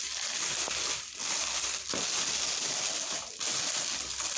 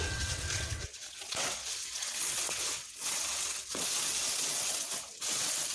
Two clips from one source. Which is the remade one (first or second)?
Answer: second